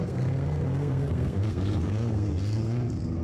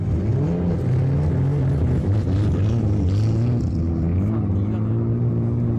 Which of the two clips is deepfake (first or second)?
first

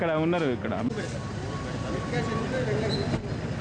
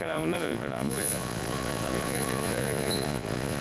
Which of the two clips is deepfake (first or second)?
second